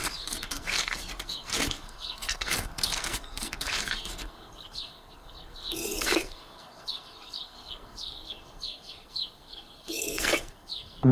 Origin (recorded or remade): remade